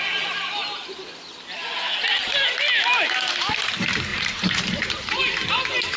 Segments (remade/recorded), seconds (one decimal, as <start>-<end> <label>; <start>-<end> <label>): 0.0-4.1 recorded; 4.1-5.2 remade; 5.2-6.0 recorded

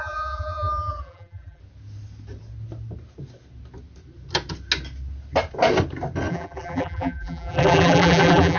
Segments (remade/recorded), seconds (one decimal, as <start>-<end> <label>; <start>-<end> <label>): 0.0-1.6 remade; 1.6-6.3 recorded; 6.3-8.6 remade

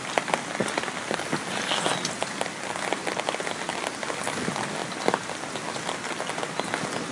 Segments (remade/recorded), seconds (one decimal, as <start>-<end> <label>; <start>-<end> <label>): 0.0-4.8 recorded; 4.8-5.3 remade; 5.3-7.1 recorded

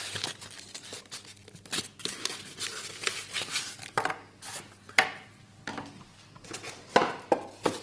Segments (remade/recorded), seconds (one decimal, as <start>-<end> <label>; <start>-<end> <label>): 0.0-6.1 recorded; 6.1-7.8 remade